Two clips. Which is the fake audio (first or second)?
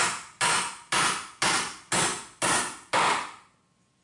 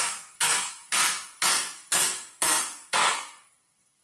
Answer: second